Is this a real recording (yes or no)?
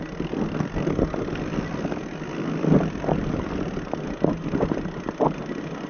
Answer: yes